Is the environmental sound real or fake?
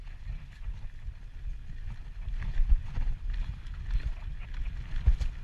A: real